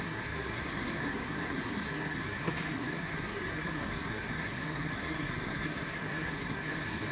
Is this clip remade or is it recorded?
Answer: remade